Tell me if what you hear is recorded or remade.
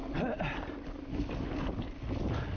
recorded